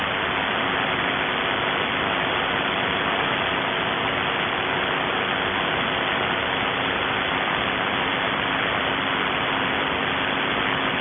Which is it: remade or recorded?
recorded